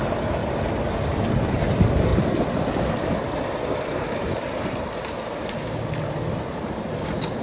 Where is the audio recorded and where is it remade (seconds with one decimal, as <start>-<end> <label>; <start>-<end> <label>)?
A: 0.0-0.4 remade; 0.4-1.3 recorded; 1.3-2.1 remade; 2.1-6.5 recorded; 6.5-7.4 remade